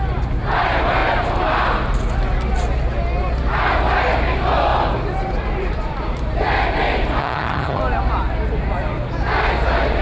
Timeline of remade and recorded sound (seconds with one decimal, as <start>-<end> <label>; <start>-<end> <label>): 0.0-7.2 recorded; 7.2-7.8 remade; 7.8-10.0 recorded